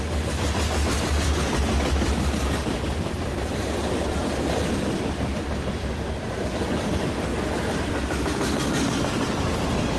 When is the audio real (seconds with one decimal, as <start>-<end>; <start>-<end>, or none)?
0.0-10.0

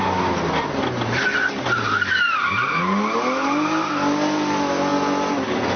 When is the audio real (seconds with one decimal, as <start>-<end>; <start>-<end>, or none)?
0.0-5.8